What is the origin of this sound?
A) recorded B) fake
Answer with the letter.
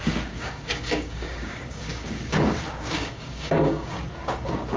B